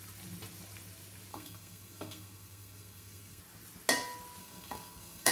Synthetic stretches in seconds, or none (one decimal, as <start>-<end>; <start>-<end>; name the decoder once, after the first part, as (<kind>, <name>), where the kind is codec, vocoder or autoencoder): 1.3-3.4 (codec, SNAC); 4.4-5.3